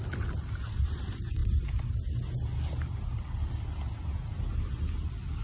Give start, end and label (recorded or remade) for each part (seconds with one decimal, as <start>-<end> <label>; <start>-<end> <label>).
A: 0.0-5.4 recorded